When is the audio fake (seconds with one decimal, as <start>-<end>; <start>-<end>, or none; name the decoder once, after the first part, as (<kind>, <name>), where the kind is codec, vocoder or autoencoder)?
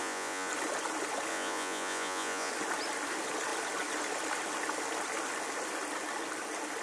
0.0-0.5 (vocoder, Vocos); 1.3-2.5